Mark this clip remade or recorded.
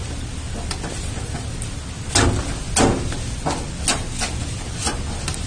recorded